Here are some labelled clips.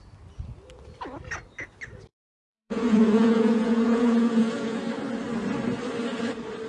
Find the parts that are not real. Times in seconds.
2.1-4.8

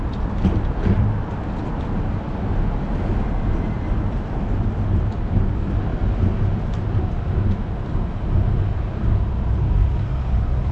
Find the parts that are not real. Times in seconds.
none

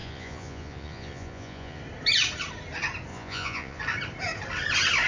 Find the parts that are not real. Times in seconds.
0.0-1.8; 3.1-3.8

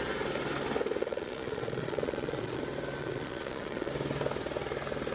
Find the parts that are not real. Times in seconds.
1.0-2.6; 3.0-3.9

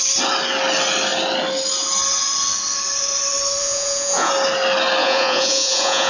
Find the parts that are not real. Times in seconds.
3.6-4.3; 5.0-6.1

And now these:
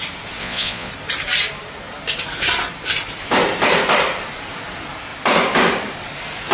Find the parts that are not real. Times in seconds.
0.4-0.9

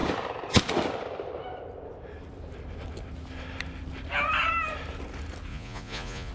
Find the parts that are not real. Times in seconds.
5.5-6.3

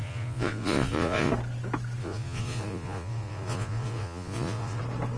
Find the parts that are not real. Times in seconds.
0.0-1.3; 2.0-4.8